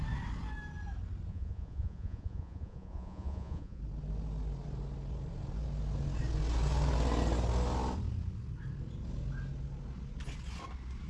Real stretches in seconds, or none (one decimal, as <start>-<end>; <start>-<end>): 0.0-1.3; 3.8-11.1